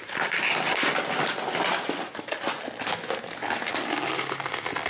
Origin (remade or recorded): recorded